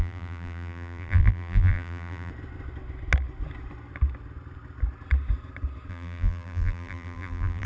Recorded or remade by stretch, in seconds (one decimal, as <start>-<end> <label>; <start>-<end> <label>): 0.0-2.3 remade; 2.3-5.9 recorded; 5.9-7.7 remade